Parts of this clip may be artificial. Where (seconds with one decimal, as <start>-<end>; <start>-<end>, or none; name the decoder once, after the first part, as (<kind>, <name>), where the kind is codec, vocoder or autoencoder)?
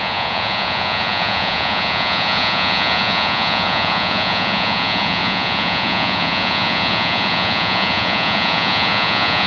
0.0-9.5 (vocoder, Vocos)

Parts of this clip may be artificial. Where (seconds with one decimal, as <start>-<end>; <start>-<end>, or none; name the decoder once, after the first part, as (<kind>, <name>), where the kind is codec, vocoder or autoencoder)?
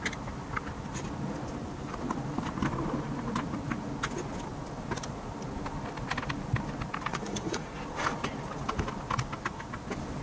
7.1-7.7 (vocoder, Vocos)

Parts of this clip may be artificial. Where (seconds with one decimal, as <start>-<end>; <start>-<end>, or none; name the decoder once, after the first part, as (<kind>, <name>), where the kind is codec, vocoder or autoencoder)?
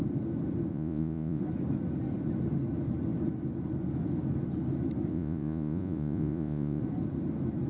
0.7-1.4 (vocoder, Vocos); 5.1-6.8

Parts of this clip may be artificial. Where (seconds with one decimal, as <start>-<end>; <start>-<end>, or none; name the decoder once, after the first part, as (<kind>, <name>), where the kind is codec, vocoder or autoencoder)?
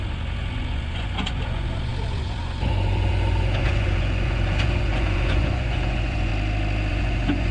0.0-6.3 (vocoder, Vocos); 6.9-7.5